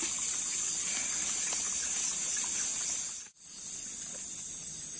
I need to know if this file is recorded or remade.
recorded